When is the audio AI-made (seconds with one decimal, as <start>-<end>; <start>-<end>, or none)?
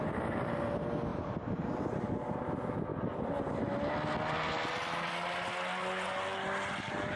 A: 1.1-2.1